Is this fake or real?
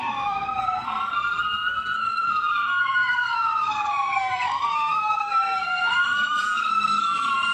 fake